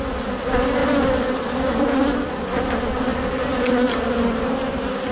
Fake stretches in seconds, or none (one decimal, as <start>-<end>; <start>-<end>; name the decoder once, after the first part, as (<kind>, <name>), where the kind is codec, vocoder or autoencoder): none